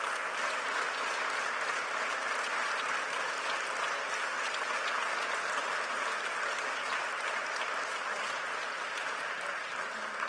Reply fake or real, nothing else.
real